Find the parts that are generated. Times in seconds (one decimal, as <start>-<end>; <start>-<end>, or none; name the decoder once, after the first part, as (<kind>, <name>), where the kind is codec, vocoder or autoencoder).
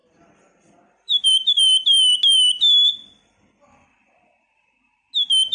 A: 0.0-3.3 (vocoder, BigVGAN v2)